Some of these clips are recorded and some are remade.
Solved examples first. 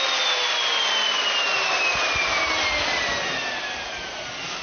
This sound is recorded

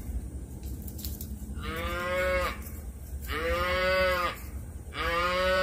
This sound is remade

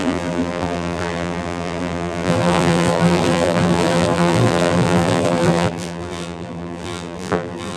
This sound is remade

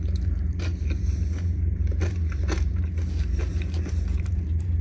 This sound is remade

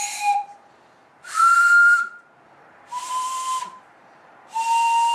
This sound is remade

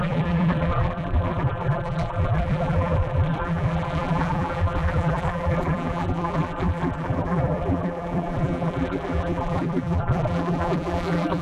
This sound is remade